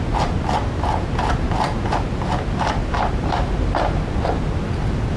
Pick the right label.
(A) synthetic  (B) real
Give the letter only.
B